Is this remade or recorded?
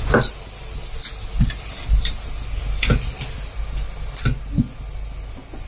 recorded